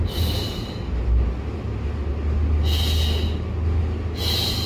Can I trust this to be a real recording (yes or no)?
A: yes